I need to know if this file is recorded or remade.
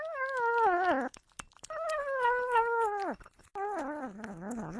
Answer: recorded